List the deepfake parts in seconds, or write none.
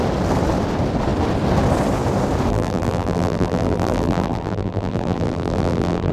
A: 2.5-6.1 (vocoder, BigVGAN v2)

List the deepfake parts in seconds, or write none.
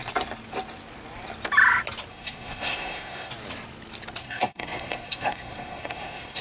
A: 2.1-3.3 (codec, SNAC); 4.2-6.4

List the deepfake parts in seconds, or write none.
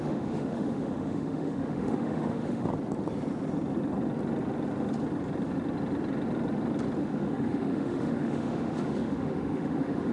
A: 0.0-2.7 (autoencoder, DAC-VAE); 7.0-10.1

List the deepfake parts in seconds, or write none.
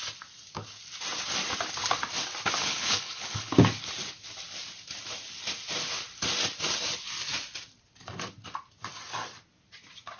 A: 2.6-3.5 (codec, HILCodec)